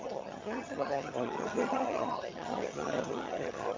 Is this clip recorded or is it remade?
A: remade